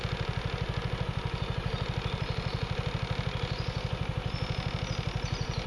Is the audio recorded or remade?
recorded